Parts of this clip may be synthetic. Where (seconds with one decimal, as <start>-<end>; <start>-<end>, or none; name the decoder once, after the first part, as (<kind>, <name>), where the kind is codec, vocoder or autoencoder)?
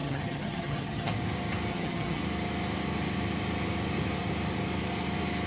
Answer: 0.0-1.1 (vocoder, HiFi-GAN); 1.7-2.2